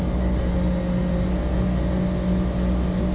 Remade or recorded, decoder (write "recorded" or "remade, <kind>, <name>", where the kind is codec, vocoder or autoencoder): recorded